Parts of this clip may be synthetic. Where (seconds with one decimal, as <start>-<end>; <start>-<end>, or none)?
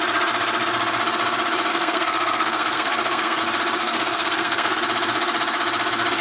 1.7-3.4; 3.8-4.8